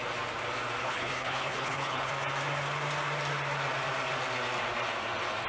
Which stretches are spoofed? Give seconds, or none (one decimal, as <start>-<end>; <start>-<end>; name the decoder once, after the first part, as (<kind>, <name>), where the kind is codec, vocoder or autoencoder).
0.8-2.1 (codec, HILCodec)